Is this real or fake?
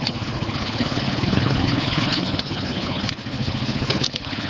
fake